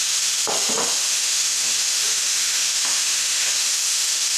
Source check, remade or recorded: remade